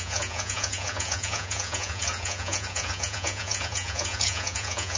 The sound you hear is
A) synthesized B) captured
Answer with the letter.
A